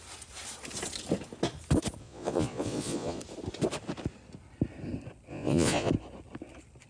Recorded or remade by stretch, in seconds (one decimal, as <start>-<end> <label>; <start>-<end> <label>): 0.0-2.0 recorded; 2.0-3.2 remade; 3.2-5.3 recorded; 5.3-5.9 remade; 5.9-6.9 recorded